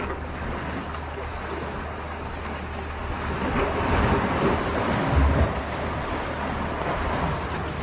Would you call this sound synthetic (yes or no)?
no